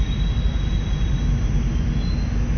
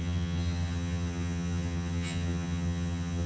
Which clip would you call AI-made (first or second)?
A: second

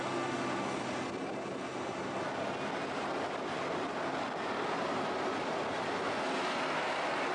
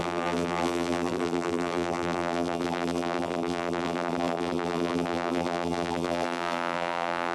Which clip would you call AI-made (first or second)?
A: second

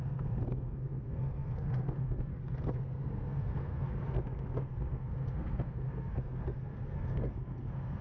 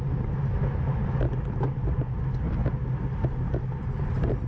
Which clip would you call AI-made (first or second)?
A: first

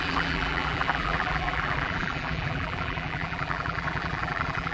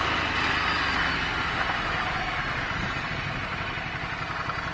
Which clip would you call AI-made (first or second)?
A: first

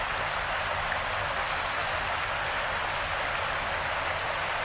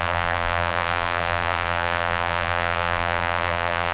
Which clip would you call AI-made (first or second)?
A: second